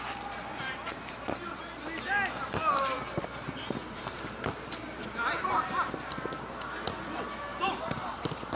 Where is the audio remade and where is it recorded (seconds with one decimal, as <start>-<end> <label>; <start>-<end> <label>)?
0.0-0.5 recorded; 0.5-1.6 remade; 1.6-3.8 recorded; 3.8-5.9 remade; 5.9-7.5 recorded; 7.5-8.6 remade